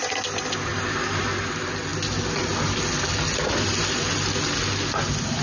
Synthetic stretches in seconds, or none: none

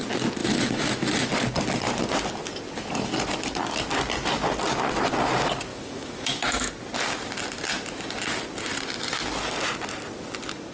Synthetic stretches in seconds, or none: 0.4-1.3 (autoencoder, DAC-VAE); 5.7-6.7